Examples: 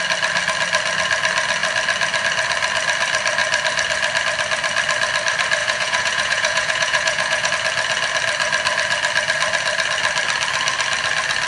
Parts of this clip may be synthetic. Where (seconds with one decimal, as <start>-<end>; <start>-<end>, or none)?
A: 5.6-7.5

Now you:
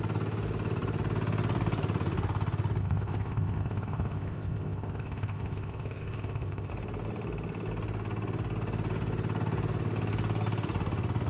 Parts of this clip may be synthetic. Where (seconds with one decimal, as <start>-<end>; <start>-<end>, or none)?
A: 2.8-6.7

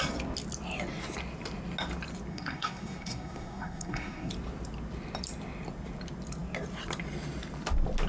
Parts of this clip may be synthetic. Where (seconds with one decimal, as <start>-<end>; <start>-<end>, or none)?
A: 2.3-4.3